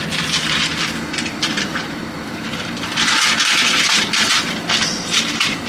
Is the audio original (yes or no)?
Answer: no